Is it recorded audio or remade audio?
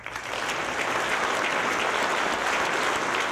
recorded